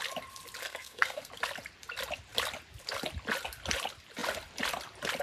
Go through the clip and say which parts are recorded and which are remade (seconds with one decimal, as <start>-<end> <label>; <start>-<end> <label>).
0.0-0.6 recorded; 0.6-1.3 remade; 1.3-5.2 recorded